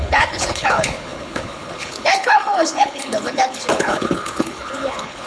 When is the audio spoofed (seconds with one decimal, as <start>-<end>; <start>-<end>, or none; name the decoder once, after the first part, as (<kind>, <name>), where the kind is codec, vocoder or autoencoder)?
0.0-5.3 (codec, HILCodec)